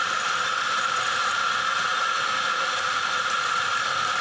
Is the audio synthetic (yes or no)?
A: no